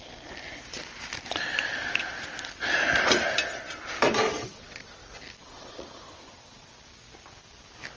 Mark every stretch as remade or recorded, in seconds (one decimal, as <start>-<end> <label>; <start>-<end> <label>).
0.0-4.4 recorded; 4.4-5.0 remade; 5.0-5.4 recorded; 5.4-6.7 remade; 6.7-8.0 recorded